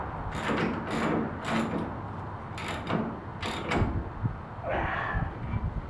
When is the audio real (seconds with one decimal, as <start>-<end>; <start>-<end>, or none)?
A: 0.0-5.9